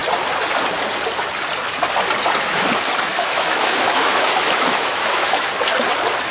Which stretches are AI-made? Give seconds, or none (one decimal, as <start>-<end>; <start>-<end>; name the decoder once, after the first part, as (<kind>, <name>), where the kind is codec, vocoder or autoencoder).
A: 3.1-5.5 (autoencoder, DAC-VAE)